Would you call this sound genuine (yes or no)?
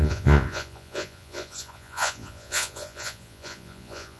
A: no